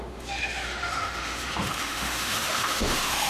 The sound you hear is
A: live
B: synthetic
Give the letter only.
B